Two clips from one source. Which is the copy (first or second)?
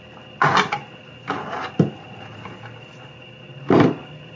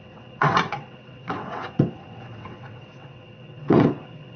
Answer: second